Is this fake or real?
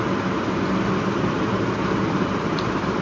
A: real